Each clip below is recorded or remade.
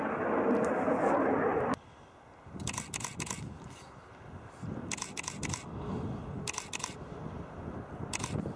recorded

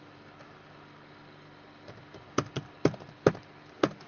recorded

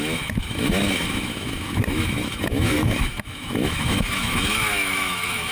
remade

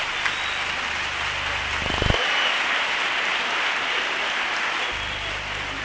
recorded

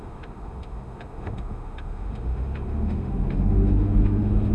remade